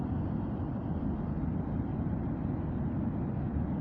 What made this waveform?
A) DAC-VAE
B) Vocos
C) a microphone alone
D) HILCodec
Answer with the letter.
C